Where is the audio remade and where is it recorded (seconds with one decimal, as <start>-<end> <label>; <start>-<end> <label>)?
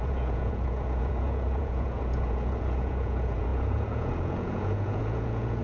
0.0-5.6 remade